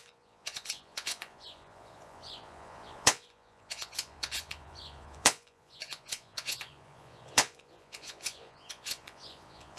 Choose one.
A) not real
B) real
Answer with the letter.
A